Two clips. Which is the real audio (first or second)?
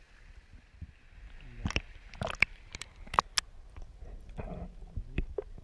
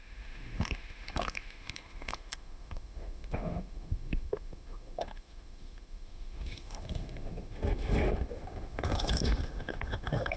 first